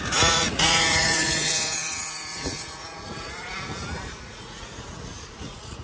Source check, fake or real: fake